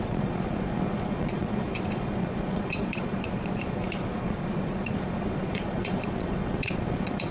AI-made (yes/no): yes